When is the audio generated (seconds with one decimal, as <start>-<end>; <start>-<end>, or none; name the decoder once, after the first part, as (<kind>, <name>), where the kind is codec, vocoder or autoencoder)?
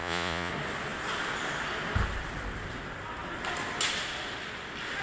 0.0-0.5 (vocoder, Vocos)